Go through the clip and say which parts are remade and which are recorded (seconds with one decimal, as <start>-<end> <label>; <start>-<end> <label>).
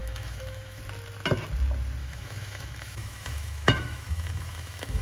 0.0-0.8 remade; 0.8-2.0 recorded; 2.0-5.0 remade